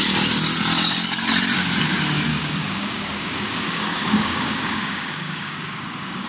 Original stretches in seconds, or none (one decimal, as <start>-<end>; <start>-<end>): 0.0-2.3